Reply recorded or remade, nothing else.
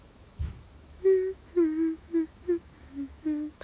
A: remade